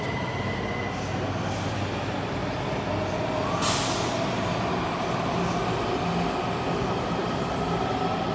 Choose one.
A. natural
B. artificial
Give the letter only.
A